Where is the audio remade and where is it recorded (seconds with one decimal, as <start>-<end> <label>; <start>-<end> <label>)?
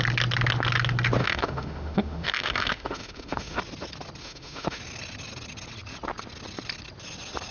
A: 0.0-1.2 recorded; 1.2-3.6 remade; 3.6-4.2 recorded; 4.2-4.8 remade; 4.8-7.5 recorded